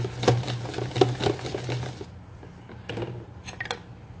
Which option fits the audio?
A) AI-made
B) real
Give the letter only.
B